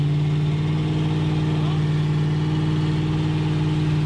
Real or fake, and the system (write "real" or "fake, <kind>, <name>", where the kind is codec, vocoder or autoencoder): real